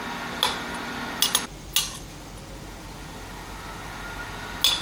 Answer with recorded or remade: recorded